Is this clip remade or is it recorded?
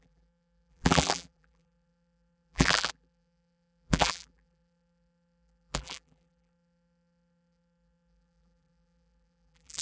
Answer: remade